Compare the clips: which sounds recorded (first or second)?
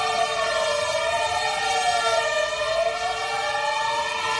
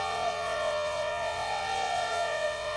first